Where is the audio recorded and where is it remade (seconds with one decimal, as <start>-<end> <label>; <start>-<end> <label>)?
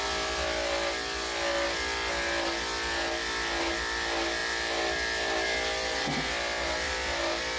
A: 0.0-7.6 recorded